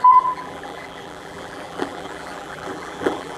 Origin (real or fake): fake